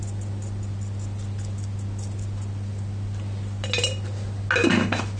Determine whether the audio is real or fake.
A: real